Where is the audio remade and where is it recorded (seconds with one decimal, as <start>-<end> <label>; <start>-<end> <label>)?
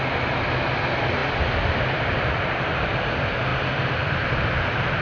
0.0-1.2 recorded; 1.2-2.5 remade; 2.5-3.5 recorded; 3.5-5.0 remade